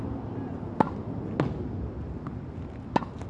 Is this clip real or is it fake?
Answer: real